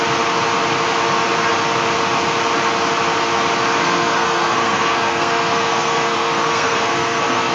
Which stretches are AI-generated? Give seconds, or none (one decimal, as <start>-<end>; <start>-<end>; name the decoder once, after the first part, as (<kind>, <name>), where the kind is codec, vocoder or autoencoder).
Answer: 3.8-7.5 (codec, SNAC)